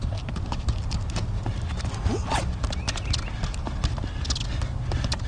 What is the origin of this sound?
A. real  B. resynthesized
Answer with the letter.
A